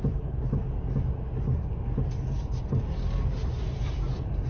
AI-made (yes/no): no